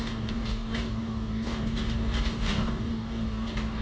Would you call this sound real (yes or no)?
no